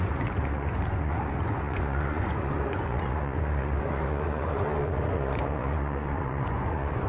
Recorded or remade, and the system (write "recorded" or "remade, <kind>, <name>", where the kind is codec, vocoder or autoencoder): remade, vocoder, Vocos